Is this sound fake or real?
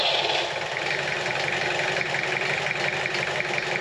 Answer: real